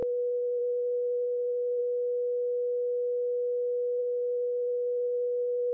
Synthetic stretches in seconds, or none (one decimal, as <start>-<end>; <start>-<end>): 0.0-1.8; 4.0-5.7